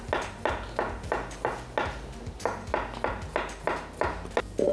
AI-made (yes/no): no